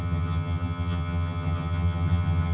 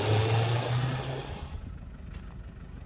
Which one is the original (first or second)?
second